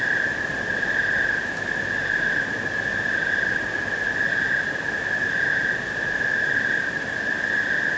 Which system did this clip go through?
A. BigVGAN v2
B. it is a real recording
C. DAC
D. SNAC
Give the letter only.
B